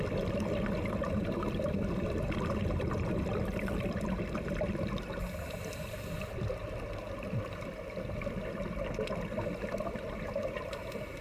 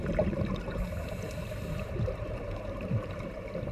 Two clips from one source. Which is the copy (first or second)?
second